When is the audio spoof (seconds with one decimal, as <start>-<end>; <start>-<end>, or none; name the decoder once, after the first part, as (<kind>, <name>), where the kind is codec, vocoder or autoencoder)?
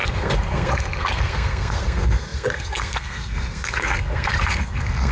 0.0-5.1 (codec, SNAC)